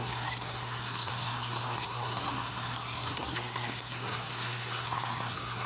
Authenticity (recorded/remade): remade